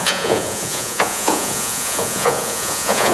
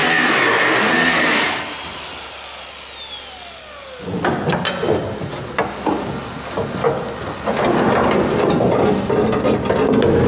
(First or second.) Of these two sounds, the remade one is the first